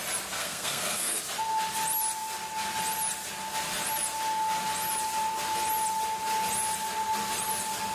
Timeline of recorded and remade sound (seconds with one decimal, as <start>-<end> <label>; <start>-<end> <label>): 0.0-0.4 recorded; 0.4-1.2 remade; 1.2-7.9 recorded